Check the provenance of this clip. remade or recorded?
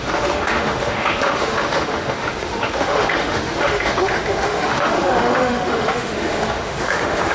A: remade